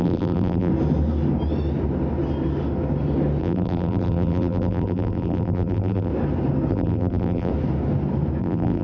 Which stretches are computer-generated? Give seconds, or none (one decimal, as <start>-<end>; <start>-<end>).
0.0-0.7; 3.4-6.1; 6.7-7.5; 8.4-8.8